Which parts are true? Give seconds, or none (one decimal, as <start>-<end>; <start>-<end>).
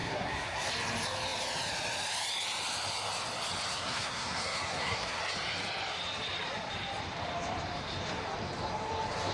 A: 0.7-3.7; 5.2-9.3